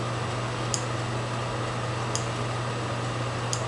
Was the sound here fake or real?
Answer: real